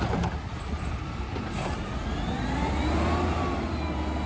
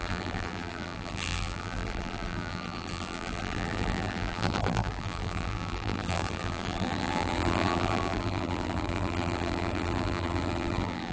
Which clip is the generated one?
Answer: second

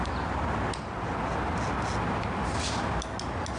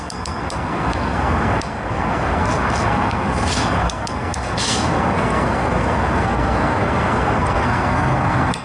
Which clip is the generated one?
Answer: second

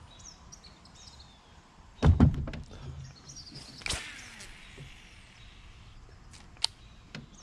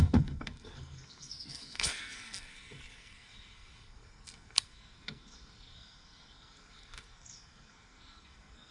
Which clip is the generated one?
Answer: second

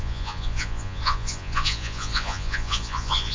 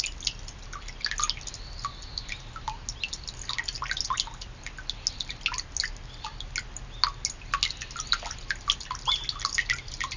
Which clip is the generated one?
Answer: first